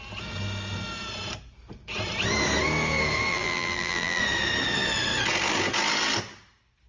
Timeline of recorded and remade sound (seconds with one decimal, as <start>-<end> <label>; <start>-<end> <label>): 0.0-3.3 recorded; 3.3-4.2 remade; 4.2-6.9 recorded

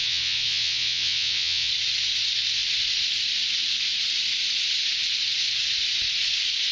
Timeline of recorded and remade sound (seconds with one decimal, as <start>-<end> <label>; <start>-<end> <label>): 0.0-1.7 remade; 1.7-6.7 recorded

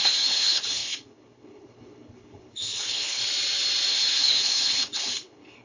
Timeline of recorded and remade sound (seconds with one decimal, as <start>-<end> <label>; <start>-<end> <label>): 0.0-3.2 remade; 3.2-3.9 recorded; 3.9-5.6 remade

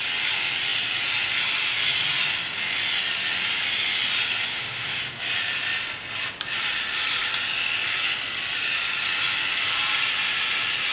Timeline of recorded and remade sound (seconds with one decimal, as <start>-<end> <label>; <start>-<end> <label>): 0.0-4.5 recorded; 4.5-5.0 remade; 5.0-10.9 recorded

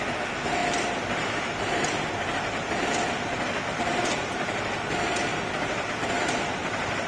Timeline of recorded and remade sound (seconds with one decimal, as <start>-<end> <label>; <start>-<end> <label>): 0.0-7.1 remade

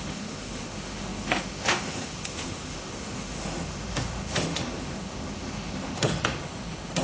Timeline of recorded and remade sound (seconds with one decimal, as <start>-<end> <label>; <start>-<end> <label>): 0.0-7.0 remade